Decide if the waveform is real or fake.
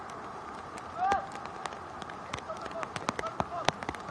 real